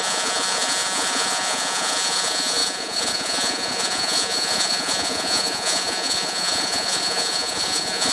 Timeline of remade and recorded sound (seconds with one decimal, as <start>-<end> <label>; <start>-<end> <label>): 0.0-8.1 remade